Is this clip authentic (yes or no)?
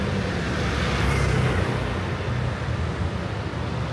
yes